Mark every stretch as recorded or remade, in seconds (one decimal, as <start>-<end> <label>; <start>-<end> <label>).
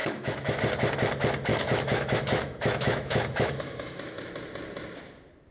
0.0-0.6 remade; 0.6-1.5 recorded; 1.5-4.3 remade; 4.3-5.5 recorded